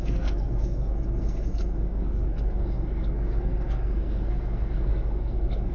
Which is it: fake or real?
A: fake